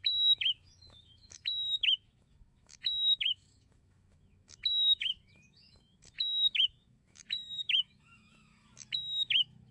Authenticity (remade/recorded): remade